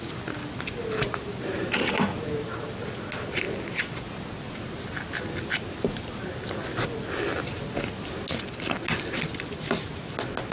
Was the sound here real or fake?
real